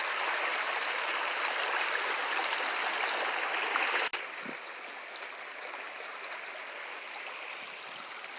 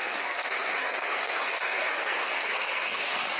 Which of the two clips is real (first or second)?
first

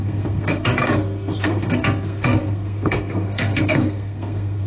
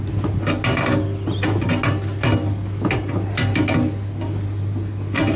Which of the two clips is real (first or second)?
second